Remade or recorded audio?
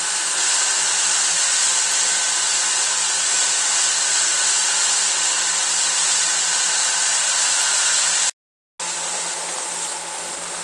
recorded